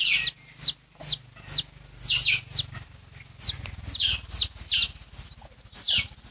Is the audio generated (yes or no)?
no